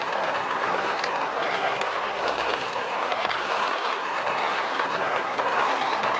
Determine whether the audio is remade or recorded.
remade